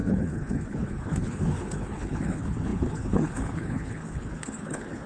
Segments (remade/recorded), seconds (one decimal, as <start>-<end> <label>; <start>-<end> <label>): 0.0-5.1 remade